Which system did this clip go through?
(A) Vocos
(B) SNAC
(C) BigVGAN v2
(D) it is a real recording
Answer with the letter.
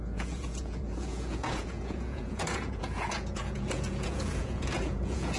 A